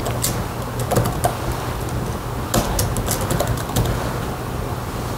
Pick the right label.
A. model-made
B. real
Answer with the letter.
B